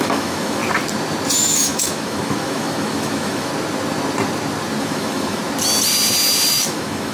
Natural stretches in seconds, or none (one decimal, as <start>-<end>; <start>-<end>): 0.6-1.4; 3.5-4.8; 5.4-6.5